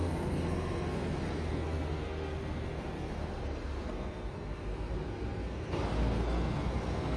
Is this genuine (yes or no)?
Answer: no